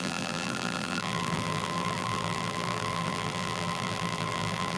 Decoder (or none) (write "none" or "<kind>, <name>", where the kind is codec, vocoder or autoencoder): vocoder, BigVGAN v2